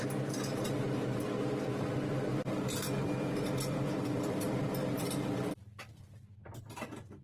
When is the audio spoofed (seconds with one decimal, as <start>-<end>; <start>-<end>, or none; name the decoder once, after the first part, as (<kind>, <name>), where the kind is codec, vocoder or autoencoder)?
2.3-6.6 (vocoder, BigVGAN v2)